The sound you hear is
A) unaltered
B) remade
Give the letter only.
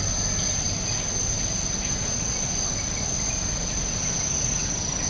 A